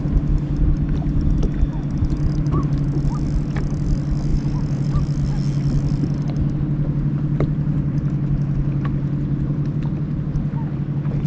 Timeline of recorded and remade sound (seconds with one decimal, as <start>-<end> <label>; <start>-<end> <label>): 0.0-4.3 recorded; 4.3-5.0 remade; 5.0-11.3 recorded